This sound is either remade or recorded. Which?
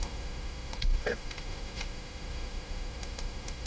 remade